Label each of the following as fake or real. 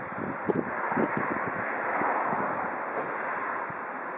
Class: fake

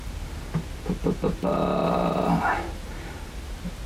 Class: real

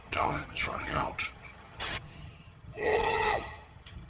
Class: fake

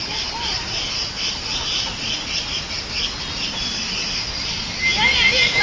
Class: real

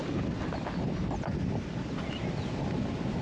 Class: real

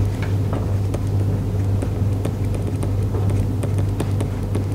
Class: real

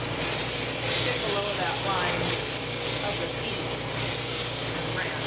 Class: real